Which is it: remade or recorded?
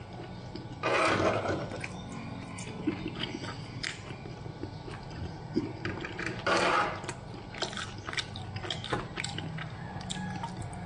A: recorded